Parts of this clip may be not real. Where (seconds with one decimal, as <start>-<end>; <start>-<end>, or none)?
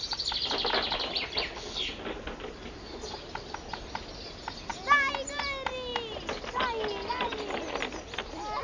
none